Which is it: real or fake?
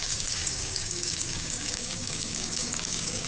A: fake